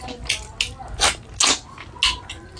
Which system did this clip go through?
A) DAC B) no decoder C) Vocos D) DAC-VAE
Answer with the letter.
B